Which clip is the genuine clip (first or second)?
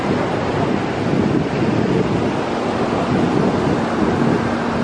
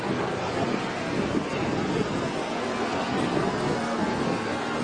first